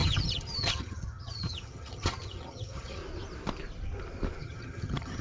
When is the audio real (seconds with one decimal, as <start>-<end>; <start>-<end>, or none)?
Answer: 3.0-4.4